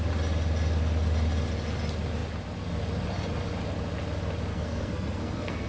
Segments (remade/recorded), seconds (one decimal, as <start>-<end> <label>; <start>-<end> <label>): 0.0-4.5 recorded; 4.5-5.7 remade